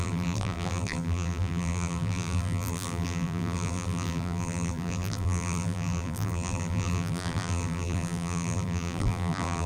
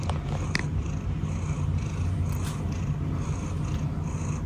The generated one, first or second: first